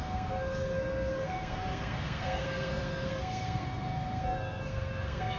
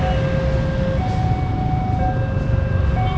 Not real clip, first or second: first